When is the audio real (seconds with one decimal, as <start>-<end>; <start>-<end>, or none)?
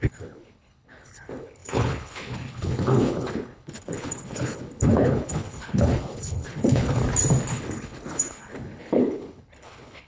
7.0-7.5